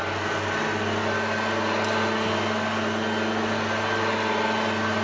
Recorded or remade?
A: recorded